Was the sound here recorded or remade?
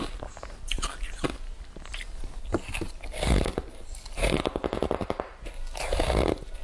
recorded